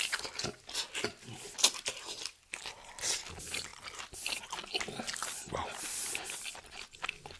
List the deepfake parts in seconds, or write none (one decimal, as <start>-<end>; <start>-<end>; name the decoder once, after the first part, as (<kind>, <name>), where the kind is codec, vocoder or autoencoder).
none